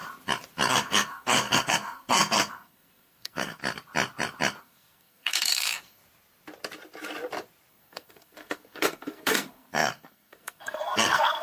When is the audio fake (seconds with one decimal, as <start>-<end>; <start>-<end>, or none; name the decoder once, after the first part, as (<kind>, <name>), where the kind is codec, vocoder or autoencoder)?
0.7-3.6 (codec, SNAC); 4.6-6.0; 7.7-11.4